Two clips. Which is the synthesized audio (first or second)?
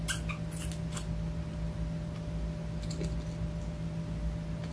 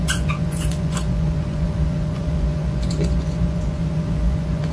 second